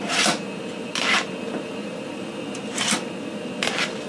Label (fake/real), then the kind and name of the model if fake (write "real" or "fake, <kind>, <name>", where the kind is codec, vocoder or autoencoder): real